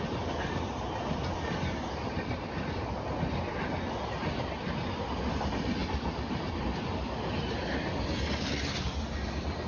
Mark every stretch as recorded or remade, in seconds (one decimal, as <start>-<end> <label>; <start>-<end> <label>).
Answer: 0.0-9.7 recorded